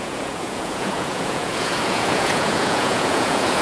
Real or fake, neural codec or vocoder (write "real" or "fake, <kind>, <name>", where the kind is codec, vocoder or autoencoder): fake, vocoder, Vocos